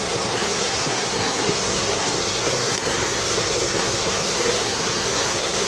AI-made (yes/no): yes